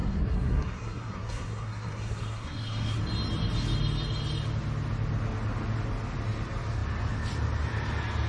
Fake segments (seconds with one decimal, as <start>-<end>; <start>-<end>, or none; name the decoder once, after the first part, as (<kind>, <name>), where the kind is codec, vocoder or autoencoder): 0.0-3.0 (codec, SNAC)